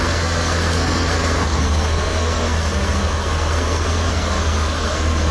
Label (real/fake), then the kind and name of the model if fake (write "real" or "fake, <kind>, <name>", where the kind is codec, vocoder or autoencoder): fake, codec, SNAC